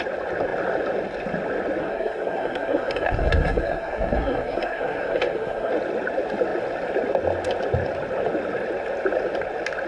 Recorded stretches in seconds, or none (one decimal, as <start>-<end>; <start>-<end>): 0.0-1.8; 5.7-9.9